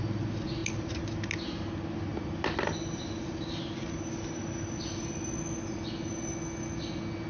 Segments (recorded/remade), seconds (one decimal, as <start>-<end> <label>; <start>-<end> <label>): 0.0-7.3 recorded